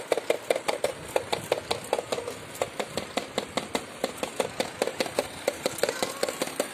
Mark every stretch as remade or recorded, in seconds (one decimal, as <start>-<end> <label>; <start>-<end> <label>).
0.0-4.0 recorded; 4.0-6.7 remade